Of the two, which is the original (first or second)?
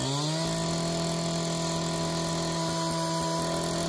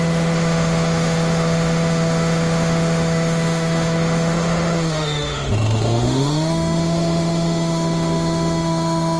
first